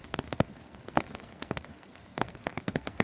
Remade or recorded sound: remade